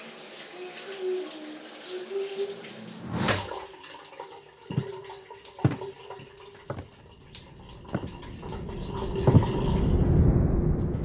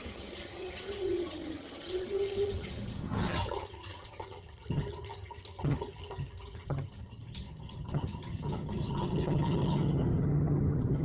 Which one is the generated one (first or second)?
second